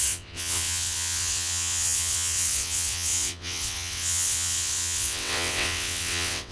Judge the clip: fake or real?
fake